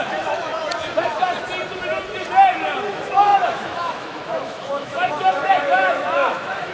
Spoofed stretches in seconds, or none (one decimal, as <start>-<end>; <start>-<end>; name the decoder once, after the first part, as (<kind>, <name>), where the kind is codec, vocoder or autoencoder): 0.0-0.5 (autoencoder, DAC-VAE); 2.9-6.7